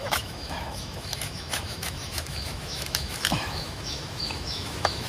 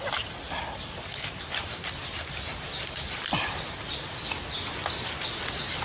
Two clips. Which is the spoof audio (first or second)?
first